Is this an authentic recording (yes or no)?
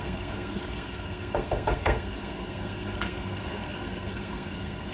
no